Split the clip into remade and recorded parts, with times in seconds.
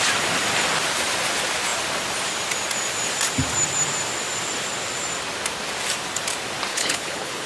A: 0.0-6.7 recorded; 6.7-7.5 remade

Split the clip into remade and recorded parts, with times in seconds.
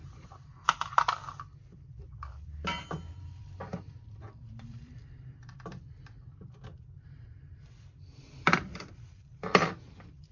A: 0.0-10.3 remade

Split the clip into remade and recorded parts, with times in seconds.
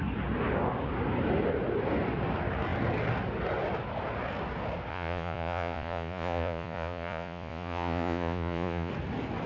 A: 0.0-4.9 recorded; 4.9-8.9 remade; 8.9-9.5 recorded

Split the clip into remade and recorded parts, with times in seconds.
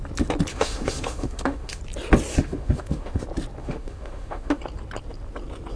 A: 0.0-0.5 recorded; 0.5-1.8 remade; 1.8-2.3 recorded; 2.3-3.2 remade; 3.2-3.6 recorded; 3.6-4.6 remade; 4.6-5.8 recorded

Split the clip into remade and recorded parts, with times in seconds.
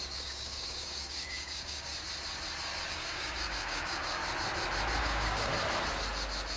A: 0.0-1.9 remade; 1.9-2.9 recorded; 2.9-4.2 remade; 4.2-5.0 recorded; 5.0-5.5 remade; 5.5-6.6 recorded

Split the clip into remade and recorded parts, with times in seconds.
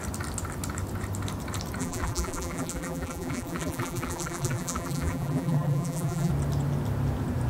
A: 0.0-1.8 recorded; 1.8-6.3 remade; 6.3-7.5 recorded